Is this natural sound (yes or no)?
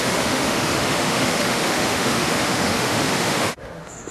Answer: no